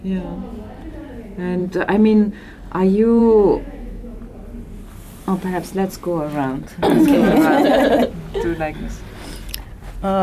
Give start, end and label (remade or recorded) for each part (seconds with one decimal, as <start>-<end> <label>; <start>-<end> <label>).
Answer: 0.0-3.2 recorded; 3.2-4.2 remade; 4.2-10.2 recorded

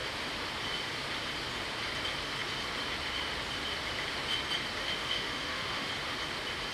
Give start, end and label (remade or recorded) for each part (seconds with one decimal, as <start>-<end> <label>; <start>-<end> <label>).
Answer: 0.0-4.8 recorded; 4.8-5.9 remade; 5.9-6.7 recorded

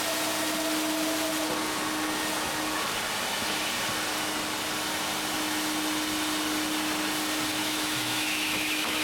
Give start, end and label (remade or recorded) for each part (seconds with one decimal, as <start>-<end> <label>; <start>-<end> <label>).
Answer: 0.0-7.6 recorded; 7.6-9.0 remade

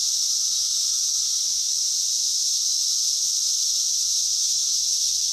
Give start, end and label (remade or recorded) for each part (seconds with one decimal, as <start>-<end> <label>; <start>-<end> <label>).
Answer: 0.0-0.6 recorded; 0.6-1.4 remade; 1.4-4.2 recorded; 4.2-5.3 remade

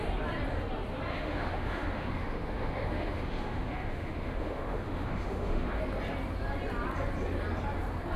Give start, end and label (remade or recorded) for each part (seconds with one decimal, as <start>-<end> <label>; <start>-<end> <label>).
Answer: 0.0-1.1 recorded; 1.1-5.8 remade; 5.8-8.2 recorded

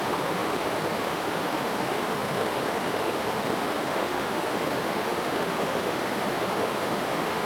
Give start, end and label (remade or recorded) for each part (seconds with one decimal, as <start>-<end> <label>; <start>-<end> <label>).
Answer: 0.0-7.5 remade